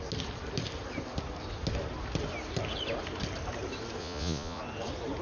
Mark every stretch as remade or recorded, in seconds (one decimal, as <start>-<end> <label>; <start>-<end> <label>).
0.0-4.0 recorded; 4.0-4.6 remade; 4.6-5.2 recorded